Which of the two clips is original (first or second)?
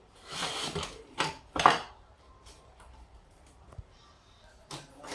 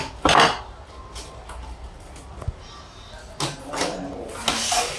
second